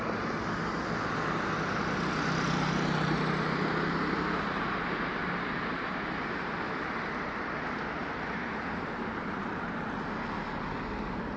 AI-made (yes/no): no